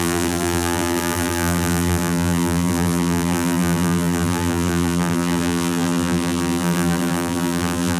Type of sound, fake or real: fake